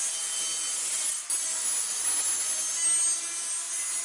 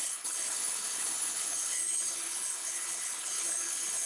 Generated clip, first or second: second